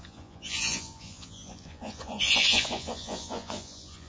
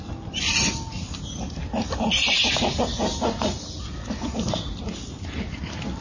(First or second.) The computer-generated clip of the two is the first